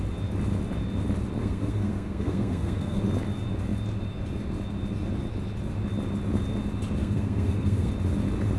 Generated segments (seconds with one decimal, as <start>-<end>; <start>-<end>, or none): 1.4-3.0; 7.0-7.9